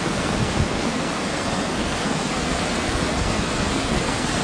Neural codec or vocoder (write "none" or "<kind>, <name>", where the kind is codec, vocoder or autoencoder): codec, SNAC